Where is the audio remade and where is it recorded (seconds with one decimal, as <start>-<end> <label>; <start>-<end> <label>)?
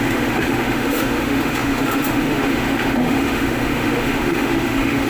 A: 0.0-5.1 remade